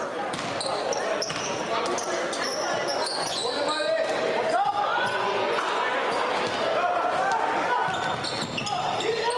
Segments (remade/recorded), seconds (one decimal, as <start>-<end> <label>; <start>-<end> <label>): 0.0-2.9 recorded; 2.9-3.5 remade; 3.5-4.9 recorded; 4.9-6.2 remade; 6.2-9.4 recorded